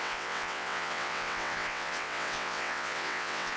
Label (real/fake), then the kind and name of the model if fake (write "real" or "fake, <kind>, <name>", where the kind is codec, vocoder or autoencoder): fake, vocoder, WaveNeXt